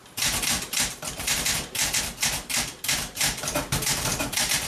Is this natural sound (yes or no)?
no